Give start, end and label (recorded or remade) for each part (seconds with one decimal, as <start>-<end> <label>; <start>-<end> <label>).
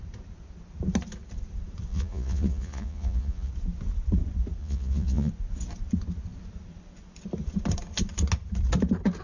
0.0-1.9 recorded; 1.9-3.5 remade; 3.5-4.6 recorded; 4.6-5.3 remade; 5.3-9.2 recorded